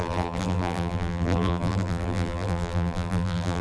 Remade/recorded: remade